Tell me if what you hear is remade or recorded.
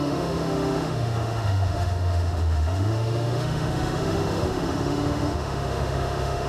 remade